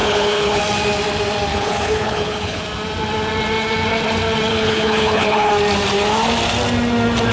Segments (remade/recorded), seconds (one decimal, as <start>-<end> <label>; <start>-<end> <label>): 0.0-0.6 remade; 0.6-1.5 recorded; 1.5-2.6 remade; 2.6-4.5 recorded; 4.5-5.5 remade; 5.5-7.3 recorded